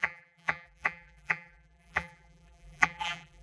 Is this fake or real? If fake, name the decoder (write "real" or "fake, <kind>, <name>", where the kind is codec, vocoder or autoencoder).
fake, vocoder, BigVGAN v2